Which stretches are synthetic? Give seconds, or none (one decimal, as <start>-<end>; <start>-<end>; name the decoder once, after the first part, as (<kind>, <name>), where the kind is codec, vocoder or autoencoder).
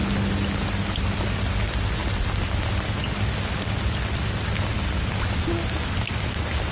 none